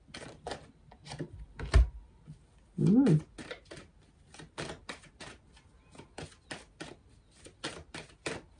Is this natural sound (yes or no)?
yes